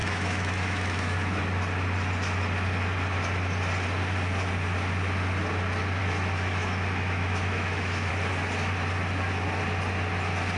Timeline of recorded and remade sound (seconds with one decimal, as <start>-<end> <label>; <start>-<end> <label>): 0.0-1.4 remade; 1.4-6.0 recorded; 6.0-8.1 remade; 8.1-10.6 recorded